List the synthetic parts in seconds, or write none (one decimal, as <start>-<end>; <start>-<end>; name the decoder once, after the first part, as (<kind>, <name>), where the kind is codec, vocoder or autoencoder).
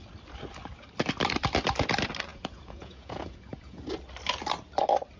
2.3-3.8 (vocoder, Vocos)